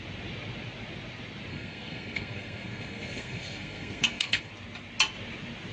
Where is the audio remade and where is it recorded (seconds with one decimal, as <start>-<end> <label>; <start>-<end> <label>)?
0.0-1.5 recorded; 1.5-4.5 remade; 4.5-5.7 recorded